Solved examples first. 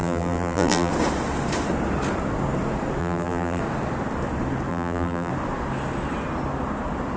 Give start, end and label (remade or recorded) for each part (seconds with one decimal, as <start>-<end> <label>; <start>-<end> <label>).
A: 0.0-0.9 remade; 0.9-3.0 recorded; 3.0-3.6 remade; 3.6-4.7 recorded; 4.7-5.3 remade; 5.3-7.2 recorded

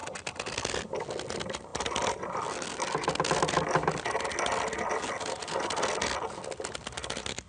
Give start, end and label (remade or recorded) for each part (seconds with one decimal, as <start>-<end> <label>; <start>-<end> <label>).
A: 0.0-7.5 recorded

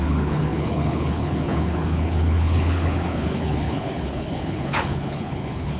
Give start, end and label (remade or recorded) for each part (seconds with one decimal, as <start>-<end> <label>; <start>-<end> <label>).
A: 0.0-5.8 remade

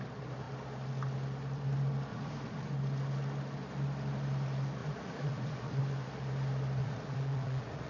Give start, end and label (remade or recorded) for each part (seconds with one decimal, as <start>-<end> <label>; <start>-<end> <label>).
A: 0.0-2.1 recorded; 2.1-2.7 remade; 2.7-4.8 recorded; 4.8-5.8 remade; 5.8-6.8 recorded; 6.8-7.9 remade

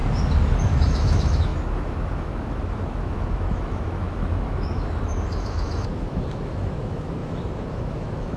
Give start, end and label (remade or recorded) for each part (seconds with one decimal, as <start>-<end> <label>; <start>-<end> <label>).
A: 0.0-0.6 recorded; 0.6-8.4 remade

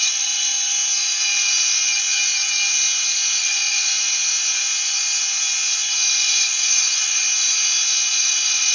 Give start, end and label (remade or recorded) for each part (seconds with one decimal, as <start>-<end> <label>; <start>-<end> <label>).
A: 0.0-0.5 remade; 0.5-3.4 recorded; 3.4-3.9 remade; 3.9-6.1 recorded; 6.1-7.2 remade; 7.2-8.2 recorded; 8.2-8.7 remade